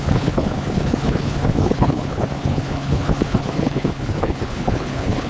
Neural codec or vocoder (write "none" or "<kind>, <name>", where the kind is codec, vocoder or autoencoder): codec, HILCodec